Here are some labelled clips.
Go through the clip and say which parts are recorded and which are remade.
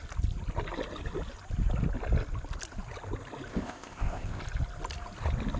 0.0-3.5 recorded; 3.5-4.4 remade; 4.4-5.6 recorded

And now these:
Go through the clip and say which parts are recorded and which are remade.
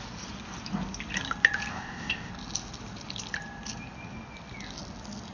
0.0-1.7 recorded; 1.7-2.3 remade; 2.3-5.3 recorded